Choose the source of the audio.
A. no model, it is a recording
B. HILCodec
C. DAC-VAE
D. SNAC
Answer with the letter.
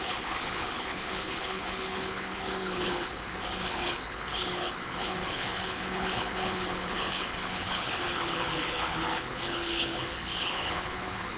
B